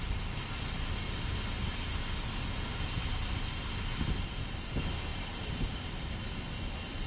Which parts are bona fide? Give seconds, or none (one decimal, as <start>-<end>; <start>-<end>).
none